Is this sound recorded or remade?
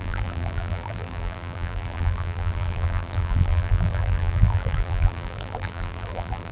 remade